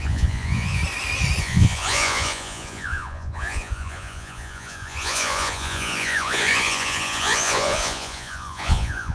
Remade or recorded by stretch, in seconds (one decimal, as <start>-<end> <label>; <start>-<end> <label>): 0.0-0.8 remade; 0.8-1.4 recorded; 1.4-9.1 remade